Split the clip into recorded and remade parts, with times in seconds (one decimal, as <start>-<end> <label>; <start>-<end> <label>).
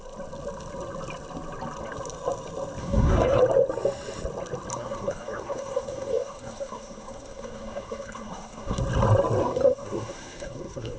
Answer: 0.0-2.8 recorded; 2.8-3.4 remade; 3.4-4.7 recorded; 4.7-8.8 remade; 8.8-9.4 recorded; 9.4-11.0 remade